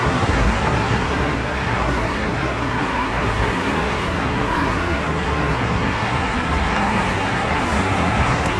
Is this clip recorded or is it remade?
remade